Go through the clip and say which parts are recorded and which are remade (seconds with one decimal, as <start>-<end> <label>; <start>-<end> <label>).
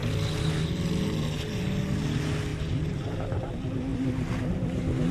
0.0-5.1 recorded